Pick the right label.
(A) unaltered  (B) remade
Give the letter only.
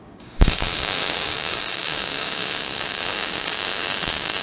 B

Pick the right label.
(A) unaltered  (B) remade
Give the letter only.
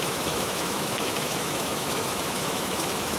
B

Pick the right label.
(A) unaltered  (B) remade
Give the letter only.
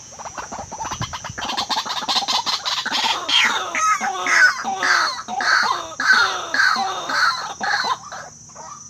A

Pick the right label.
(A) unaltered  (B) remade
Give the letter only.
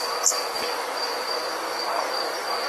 A